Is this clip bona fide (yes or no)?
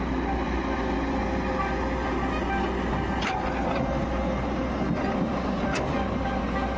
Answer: yes